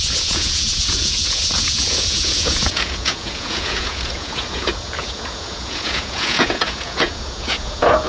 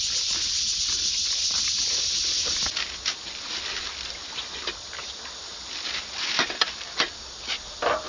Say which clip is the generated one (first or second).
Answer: first